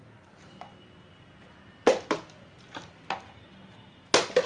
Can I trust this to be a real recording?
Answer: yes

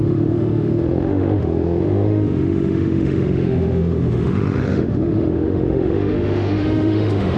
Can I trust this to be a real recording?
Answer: no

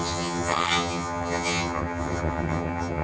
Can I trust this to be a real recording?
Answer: no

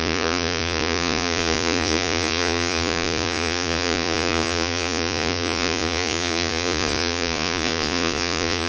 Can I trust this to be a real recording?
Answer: no